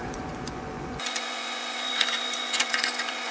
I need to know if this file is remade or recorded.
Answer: remade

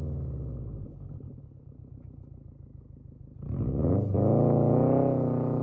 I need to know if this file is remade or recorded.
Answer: recorded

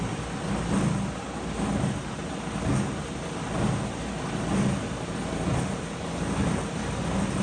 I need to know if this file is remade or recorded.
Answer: recorded